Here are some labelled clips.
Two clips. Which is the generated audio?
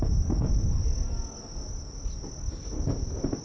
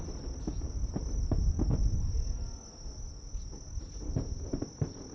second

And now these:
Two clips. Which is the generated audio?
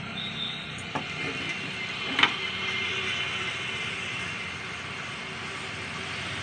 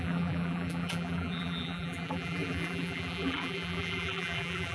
second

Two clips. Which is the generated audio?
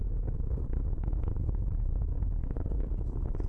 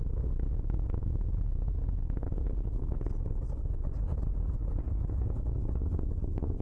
first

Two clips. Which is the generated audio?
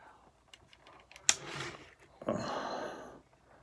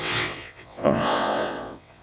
second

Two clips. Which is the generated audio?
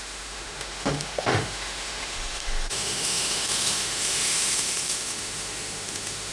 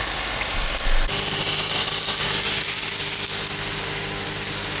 first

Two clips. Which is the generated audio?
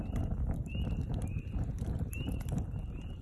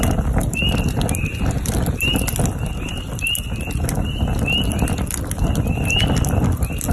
first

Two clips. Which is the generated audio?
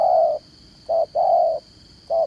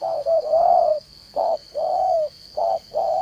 second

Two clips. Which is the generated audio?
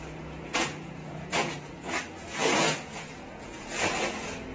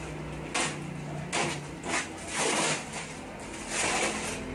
first